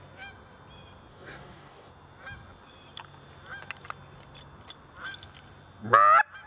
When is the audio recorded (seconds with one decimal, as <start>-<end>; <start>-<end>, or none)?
0.0-1.1; 1.9-6.5